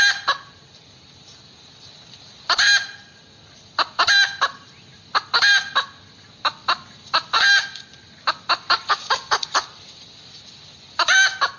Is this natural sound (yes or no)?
yes